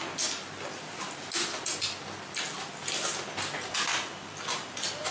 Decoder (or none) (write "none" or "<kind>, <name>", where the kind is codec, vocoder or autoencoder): none